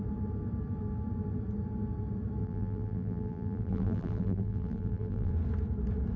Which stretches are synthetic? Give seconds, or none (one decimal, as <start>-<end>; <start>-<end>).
2.4-5.3